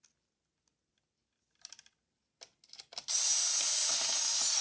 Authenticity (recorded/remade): recorded